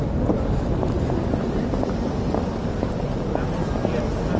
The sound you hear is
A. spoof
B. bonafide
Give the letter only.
B